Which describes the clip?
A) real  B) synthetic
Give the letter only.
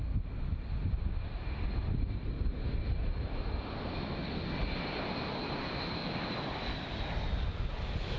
A